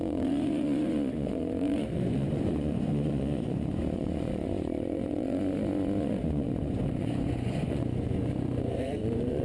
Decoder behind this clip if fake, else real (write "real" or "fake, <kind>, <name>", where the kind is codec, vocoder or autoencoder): fake, vocoder, Vocos